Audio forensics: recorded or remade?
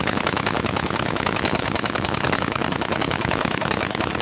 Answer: remade